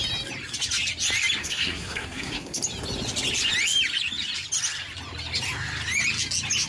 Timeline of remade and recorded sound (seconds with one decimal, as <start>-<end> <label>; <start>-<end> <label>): 0.0-1.4 recorded; 1.4-2.6 remade; 2.6-6.7 recorded